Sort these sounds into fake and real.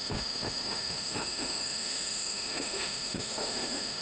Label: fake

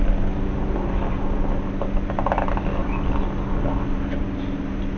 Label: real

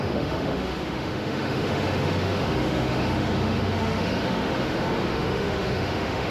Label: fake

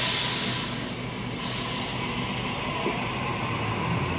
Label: real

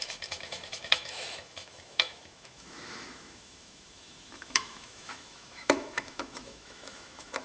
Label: fake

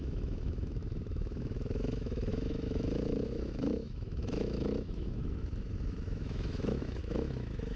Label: fake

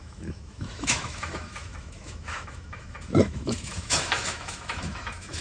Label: fake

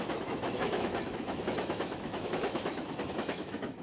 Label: fake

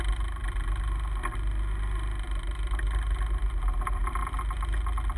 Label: real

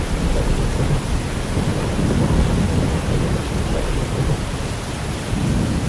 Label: real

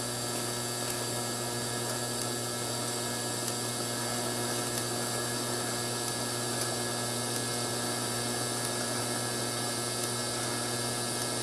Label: real